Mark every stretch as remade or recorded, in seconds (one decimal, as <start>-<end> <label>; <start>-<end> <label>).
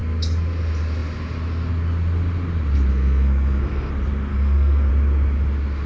0.0-2.9 recorded; 2.9-3.9 remade; 3.9-4.3 recorded; 4.3-4.9 remade; 4.9-5.9 recorded